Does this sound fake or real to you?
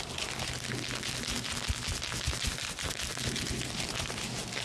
real